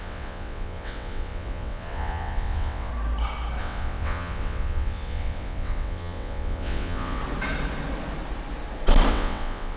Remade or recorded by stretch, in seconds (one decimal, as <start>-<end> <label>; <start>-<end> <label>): 0.0-2.9 remade; 2.9-3.6 recorded; 3.6-7.2 remade; 7.2-9.1 recorded; 9.1-9.8 remade